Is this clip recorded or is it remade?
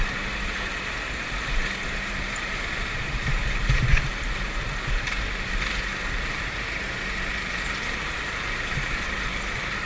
remade